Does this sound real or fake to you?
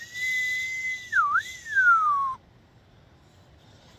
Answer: real